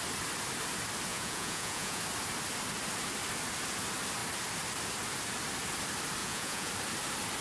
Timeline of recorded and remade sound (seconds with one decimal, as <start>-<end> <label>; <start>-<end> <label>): 0.0-1.1 recorded; 1.1-2.0 remade; 2.0-6.2 recorded; 6.2-6.7 remade; 6.7-7.4 recorded